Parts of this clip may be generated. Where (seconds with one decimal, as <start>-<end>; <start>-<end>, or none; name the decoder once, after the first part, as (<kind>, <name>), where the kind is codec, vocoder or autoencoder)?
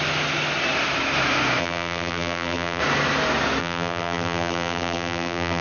1.6-2.8 (vocoder, BigVGAN v2); 3.6-5.6